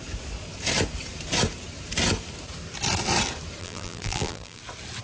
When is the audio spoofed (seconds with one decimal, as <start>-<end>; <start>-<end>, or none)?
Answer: 3.6-4.6